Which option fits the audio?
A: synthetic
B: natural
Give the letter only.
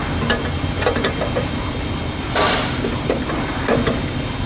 B